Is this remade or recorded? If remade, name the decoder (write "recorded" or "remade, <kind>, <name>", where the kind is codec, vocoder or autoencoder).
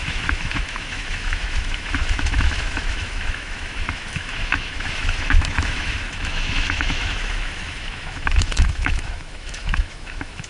remade, autoencoder, DAC-VAE